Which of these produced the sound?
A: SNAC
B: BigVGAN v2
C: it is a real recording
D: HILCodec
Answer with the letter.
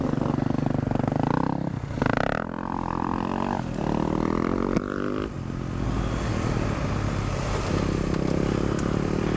C